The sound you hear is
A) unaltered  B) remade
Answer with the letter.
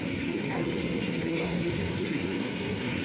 B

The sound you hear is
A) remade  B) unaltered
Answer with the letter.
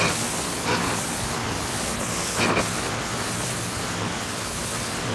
B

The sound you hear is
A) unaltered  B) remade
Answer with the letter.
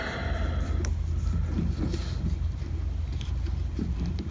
A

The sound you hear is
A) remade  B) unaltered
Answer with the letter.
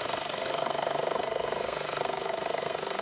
A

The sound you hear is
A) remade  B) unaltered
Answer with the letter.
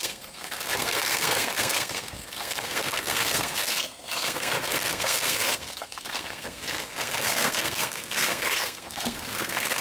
A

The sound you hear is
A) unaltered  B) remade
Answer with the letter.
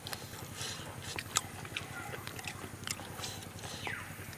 A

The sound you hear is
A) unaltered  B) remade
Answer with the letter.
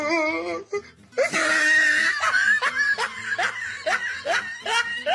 A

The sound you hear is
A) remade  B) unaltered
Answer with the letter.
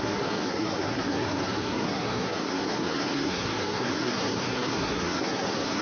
A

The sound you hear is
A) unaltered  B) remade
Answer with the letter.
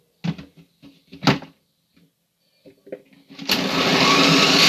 A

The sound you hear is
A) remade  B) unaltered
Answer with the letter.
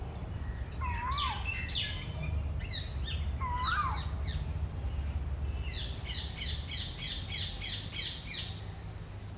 B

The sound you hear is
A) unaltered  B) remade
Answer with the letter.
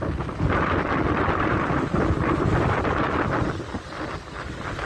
A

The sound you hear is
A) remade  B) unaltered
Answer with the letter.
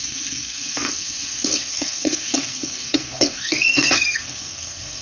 A